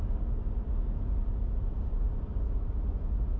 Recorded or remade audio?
recorded